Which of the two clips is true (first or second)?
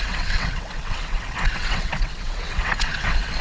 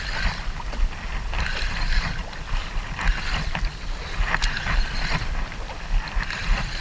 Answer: second